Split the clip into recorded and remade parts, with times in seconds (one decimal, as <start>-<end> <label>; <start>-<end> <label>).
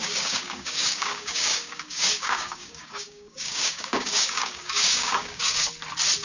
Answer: 0.0-5.6 remade; 5.6-6.2 recorded